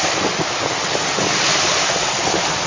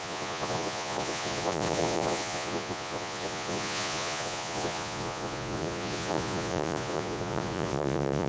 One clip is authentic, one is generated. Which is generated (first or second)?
second